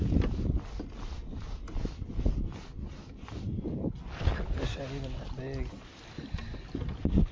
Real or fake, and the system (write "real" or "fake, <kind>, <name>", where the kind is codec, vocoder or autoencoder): real